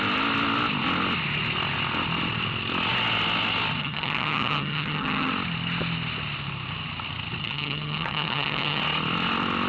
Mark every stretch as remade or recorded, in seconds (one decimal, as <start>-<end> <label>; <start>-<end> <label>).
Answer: 0.0-3.8 recorded; 3.8-5.3 remade; 5.3-7.4 recorded; 7.4-8.8 remade; 8.8-9.7 recorded